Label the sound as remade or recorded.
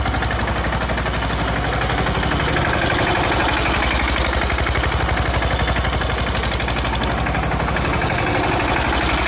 recorded